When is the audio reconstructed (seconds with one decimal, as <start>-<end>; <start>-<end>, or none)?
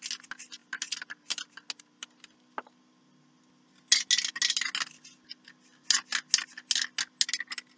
none